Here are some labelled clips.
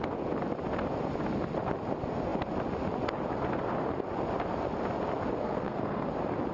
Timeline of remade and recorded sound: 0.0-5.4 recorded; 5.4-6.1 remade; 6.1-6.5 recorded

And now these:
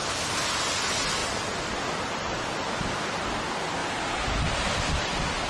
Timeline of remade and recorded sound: 0.0-5.5 recorded

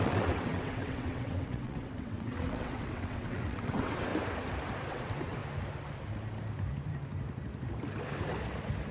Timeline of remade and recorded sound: 0.0-4.1 remade; 4.1-4.9 recorded; 4.9-5.4 remade; 5.4-8.9 recorded

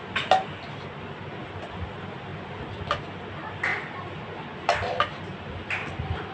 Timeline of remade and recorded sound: 0.0-6.3 recorded